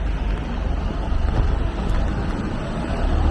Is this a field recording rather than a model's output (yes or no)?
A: yes